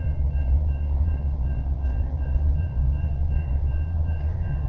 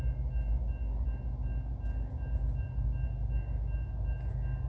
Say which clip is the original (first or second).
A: second